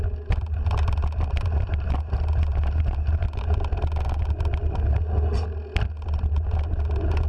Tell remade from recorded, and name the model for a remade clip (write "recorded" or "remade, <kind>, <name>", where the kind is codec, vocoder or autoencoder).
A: recorded